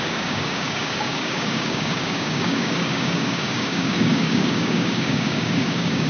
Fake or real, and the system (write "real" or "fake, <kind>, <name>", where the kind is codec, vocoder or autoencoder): fake, codec, DAC